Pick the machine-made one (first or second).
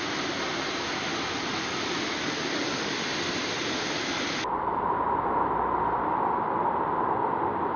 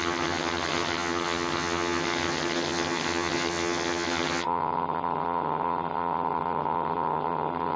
second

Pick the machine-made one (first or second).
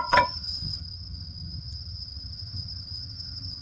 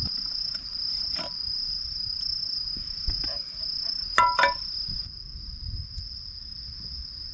first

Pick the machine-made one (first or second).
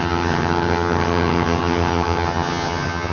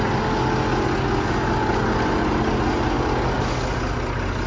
first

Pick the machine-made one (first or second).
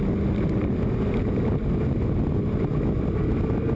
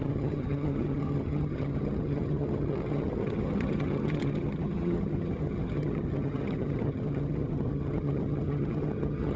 second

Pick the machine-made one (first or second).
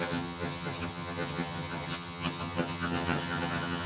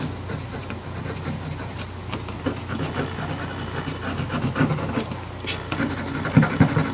first